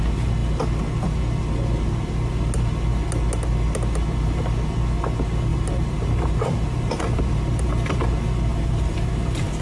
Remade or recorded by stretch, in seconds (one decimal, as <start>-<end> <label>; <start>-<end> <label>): 0.0-5.5 recorded; 5.5-7.7 remade; 7.7-8.5 recorded; 8.5-9.6 remade